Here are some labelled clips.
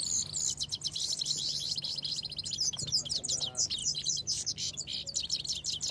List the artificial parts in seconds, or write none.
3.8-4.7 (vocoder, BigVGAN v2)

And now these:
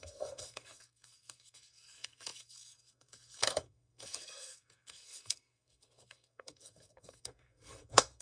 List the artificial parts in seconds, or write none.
0.0-8.2 (codec, SNAC)

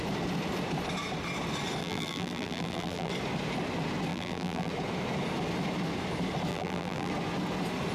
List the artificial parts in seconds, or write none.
1.8-3.1 (vocoder, BigVGAN v2); 4.1-4.7; 6.5-7.1

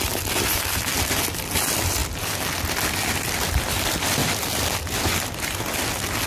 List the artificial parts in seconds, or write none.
0.0-4.2 (vocoder, BigVGAN v2)

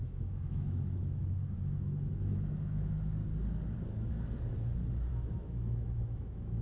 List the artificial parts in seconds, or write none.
0.0-3.2 (autoencoder, DAC-VAE); 5.1-6.6

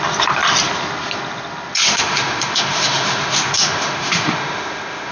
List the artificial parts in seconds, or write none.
1.9-5.1 (autoencoder, DAC-VAE)

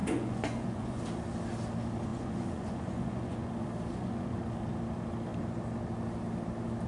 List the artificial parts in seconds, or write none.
0.0-1.0 (vocoder, Vocos); 2.1-3.5; 3.9-4.4

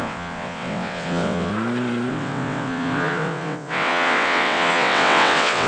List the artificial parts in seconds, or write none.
0.0-1.5 (vocoder, WaveNeXt); 2.1-5.7